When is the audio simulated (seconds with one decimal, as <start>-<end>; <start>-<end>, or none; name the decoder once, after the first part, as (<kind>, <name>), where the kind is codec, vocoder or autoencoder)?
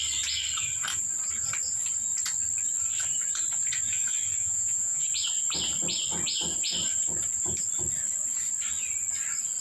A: 4.4-5.0 (vocoder, Vocos)